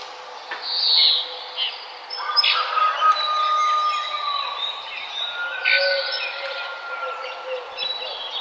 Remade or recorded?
recorded